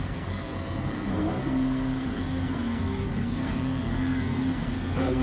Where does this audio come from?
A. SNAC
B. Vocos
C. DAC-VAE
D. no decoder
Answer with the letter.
A